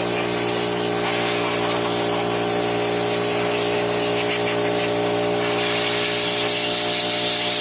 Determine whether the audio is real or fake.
real